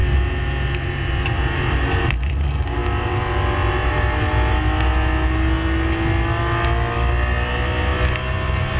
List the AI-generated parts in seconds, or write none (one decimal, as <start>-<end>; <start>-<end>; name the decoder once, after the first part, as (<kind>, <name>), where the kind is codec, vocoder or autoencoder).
none